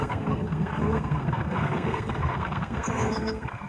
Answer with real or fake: fake